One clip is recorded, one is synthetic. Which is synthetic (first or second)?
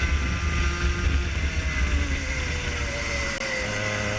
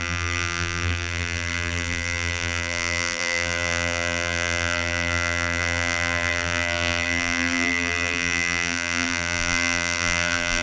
second